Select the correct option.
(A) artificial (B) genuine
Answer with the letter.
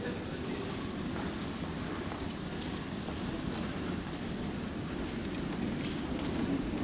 A